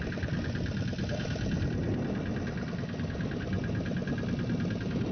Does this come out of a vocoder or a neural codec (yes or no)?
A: no